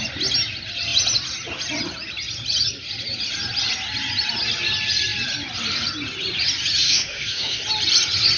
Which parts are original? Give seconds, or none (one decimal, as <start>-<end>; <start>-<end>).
0.0-6.8; 7.6-8.4